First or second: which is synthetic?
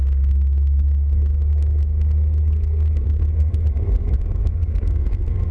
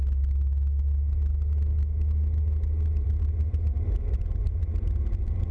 first